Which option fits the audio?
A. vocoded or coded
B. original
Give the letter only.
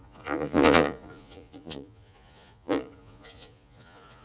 A